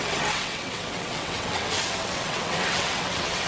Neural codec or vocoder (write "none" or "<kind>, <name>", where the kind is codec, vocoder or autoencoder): vocoder, WaveNeXt